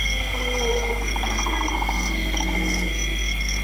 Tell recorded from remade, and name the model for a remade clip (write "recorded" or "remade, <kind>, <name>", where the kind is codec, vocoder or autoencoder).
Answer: remade, codec, SNAC